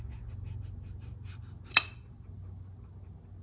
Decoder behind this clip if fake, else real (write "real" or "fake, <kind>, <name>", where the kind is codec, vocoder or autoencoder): real